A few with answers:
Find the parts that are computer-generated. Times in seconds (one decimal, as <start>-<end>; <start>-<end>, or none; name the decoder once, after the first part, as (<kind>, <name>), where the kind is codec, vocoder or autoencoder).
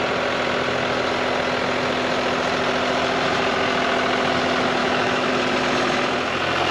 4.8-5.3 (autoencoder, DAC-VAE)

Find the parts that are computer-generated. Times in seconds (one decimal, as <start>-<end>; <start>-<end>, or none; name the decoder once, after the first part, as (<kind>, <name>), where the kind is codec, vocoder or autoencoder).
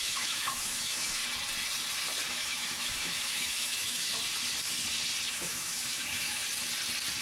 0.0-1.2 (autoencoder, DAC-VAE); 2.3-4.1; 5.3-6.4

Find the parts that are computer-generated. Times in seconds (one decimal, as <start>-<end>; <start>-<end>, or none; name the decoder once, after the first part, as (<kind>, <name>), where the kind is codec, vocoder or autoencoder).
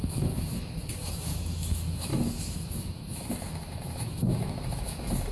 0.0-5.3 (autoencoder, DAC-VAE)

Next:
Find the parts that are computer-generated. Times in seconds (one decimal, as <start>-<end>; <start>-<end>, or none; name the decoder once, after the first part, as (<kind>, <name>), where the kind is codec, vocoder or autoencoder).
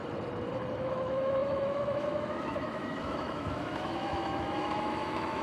0.8-5.4 (autoencoder, DAC-VAE)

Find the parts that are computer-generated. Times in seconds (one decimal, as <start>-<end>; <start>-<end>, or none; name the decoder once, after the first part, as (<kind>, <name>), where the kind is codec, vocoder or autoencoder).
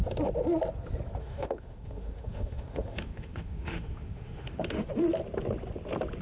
1.2-4.9 (autoencoder, DAC-VAE)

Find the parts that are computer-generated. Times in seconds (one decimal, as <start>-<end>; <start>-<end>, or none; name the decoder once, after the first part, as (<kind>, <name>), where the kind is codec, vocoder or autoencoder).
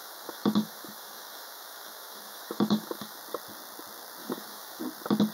0.0-3.2 (autoencoder, DAC-VAE); 4.2-4.8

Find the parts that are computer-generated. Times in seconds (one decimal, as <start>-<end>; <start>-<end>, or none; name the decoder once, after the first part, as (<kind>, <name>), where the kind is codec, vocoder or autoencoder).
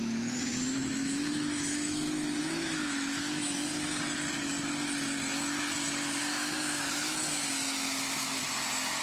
0.0-3.7 (autoencoder, DAC-VAE); 6.2-8.4